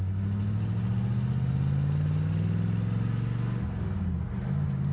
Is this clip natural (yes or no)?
yes